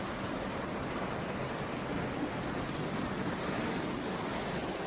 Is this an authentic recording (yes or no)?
yes